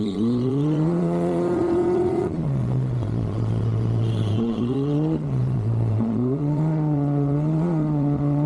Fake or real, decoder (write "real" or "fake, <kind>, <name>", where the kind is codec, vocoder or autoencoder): fake, vocoder, Vocos